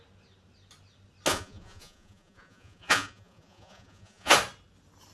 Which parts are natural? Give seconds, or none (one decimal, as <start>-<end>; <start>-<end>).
0.0-1.3; 4.3-5.1